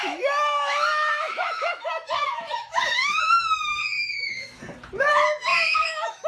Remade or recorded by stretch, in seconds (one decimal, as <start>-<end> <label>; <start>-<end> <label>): 0.0-4.6 remade; 4.6-5.1 recorded; 5.1-6.3 remade